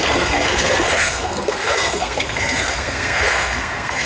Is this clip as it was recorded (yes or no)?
no